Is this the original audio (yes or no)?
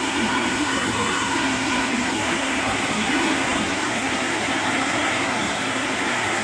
no